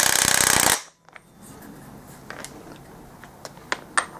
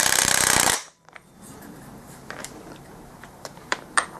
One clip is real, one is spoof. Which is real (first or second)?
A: first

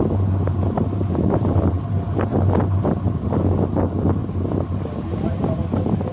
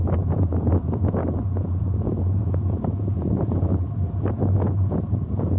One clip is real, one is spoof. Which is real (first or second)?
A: first